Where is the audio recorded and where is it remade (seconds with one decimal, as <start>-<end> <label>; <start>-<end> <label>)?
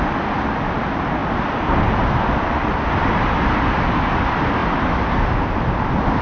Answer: 0.0-6.2 recorded